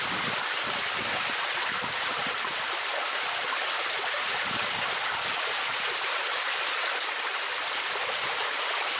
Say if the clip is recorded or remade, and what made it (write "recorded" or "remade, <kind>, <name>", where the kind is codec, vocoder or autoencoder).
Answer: recorded